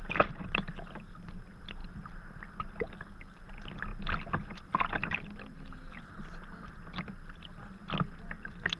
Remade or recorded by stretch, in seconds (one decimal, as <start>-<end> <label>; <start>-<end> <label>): 0.0-8.8 recorded